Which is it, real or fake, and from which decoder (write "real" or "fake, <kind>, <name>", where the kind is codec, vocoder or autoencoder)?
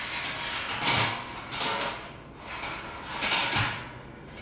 real